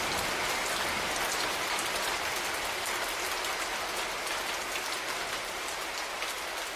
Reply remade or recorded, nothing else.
recorded